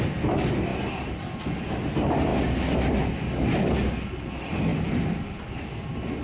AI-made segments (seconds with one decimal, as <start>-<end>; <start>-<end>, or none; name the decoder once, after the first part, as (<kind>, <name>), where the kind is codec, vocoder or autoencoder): 0.7-1.9 (vocoder, BigVGAN v2); 4.7-6.2